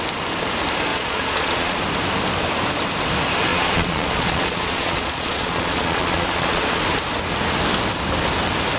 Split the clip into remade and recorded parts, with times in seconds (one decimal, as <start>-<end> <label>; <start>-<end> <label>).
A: 0.0-0.9 recorded; 0.9-1.8 remade; 1.8-3.5 recorded; 3.5-6.8 remade; 6.8-8.8 recorded